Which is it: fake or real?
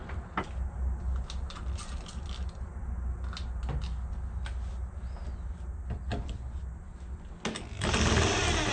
real